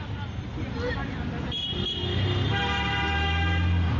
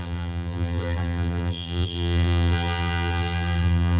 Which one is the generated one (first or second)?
second